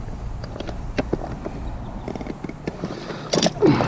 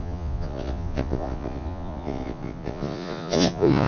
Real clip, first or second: first